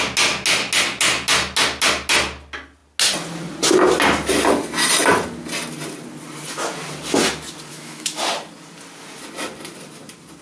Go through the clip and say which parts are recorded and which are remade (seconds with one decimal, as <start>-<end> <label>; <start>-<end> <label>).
0.0-7.7 recorded; 7.7-8.2 remade; 8.2-10.4 recorded